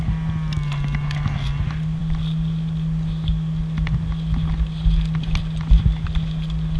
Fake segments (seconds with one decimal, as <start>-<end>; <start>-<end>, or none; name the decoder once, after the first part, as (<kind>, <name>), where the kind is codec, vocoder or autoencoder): none